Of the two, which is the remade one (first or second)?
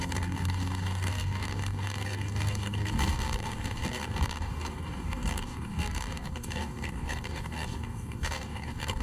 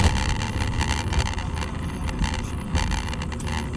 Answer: first